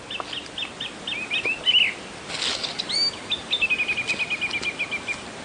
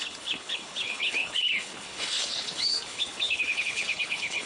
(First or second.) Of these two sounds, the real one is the first